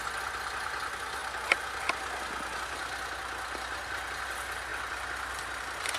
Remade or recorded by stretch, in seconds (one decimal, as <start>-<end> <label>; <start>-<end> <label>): 0.0-4.7 recorded; 4.7-5.3 remade; 5.3-6.0 recorded